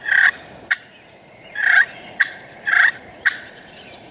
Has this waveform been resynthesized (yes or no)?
yes